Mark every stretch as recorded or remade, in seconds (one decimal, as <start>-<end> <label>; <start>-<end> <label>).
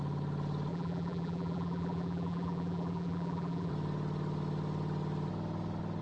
0.0-0.7 recorded; 0.7-3.7 remade; 3.7-6.0 recorded